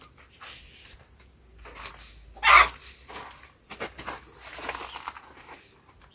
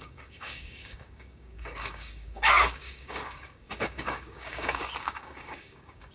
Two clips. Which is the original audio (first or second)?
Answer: first